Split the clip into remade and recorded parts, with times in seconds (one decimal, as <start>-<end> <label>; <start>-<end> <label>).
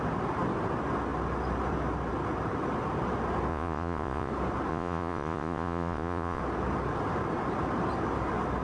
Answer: 0.0-3.5 recorded; 3.5-4.3 remade; 4.3-4.7 recorded; 4.7-6.4 remade; 6.4-8.6 recorded